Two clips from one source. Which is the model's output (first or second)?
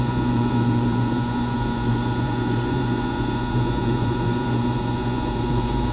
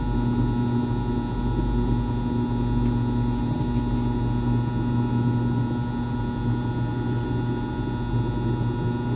first